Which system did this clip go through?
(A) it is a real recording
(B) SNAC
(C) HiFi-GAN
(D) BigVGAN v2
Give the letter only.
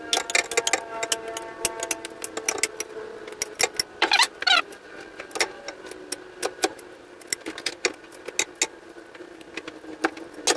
A